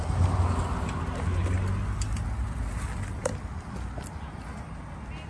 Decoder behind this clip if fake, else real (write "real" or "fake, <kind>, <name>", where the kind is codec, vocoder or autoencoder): real